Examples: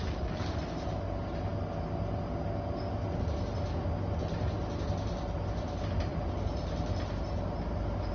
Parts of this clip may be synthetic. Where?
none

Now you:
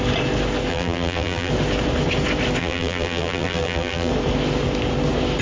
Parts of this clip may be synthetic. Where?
0.7-1.5 (vocoder, BigVGAN v2); 2.6-4.1

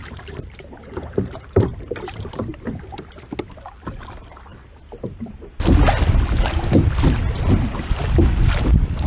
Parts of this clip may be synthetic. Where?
0.0-2.8 (vocoder, BigVGAN v2); 4.5-5.5

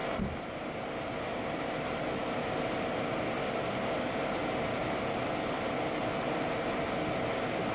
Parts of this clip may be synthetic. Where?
0.0-1.7 (vocoder, BigVGAN v2); 2.2-6.8